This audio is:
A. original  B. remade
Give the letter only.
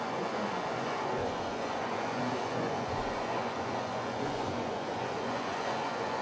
B